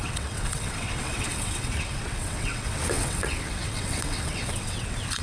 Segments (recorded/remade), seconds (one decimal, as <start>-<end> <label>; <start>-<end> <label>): 0.0-5.2 remade